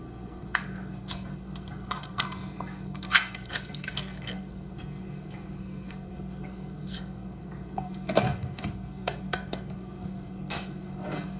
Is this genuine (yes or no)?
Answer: no